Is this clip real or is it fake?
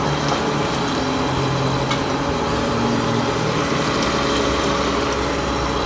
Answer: real